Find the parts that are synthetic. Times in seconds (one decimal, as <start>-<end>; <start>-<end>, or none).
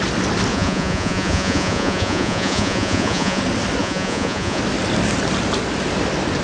0.5-3.4; 3.8-4.6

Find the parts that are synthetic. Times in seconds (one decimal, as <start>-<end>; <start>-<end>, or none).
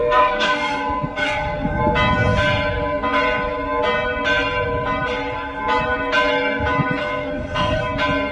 0.0-1.8; 7.0-7.8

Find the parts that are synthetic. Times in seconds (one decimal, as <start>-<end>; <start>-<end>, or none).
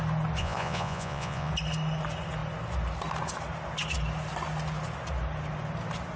0.4-1.5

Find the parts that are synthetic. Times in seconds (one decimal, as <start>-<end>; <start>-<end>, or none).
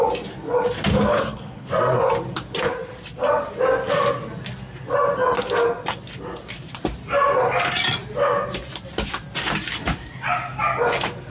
1.1-1.7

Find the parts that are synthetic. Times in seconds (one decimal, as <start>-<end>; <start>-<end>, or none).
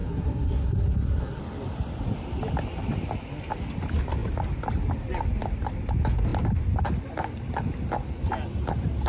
0.0-1.4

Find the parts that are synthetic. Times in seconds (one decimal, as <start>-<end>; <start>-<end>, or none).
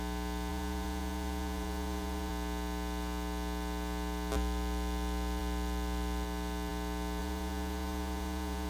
0.5-2.3; 7.2-8.7